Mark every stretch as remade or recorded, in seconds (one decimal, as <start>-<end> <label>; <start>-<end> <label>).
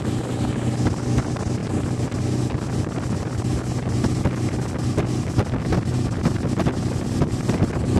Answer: 0.0-8.0 recorded